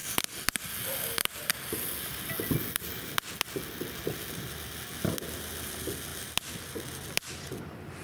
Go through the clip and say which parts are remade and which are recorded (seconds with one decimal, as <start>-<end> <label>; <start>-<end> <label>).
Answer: 0.0-8.0 recorded